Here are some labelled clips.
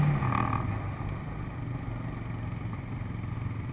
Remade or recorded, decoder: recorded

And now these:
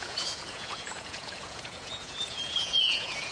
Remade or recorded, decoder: remade, vocoder, Vocos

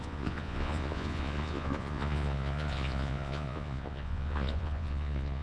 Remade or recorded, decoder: remade, vocoder, Vocos